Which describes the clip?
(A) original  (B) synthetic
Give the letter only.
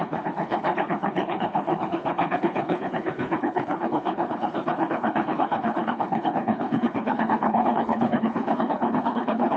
B